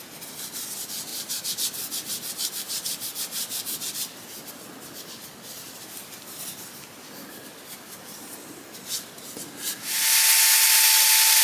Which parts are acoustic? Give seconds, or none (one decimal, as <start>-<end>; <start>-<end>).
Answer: 0.0-11.4